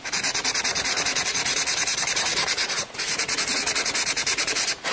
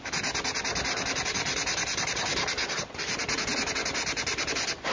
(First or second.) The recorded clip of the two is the second